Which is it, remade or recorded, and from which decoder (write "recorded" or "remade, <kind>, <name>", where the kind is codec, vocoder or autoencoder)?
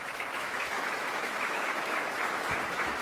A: remade, autoencoder, DAC-VAE